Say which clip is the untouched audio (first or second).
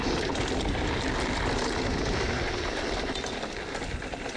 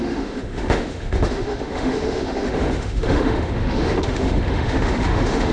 first